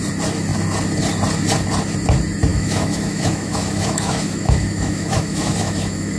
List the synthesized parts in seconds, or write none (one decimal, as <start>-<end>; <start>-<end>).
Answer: 2.5-6.2